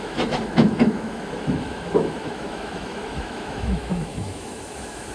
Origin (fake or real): fake